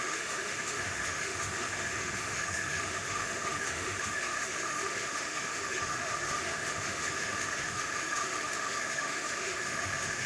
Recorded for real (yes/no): no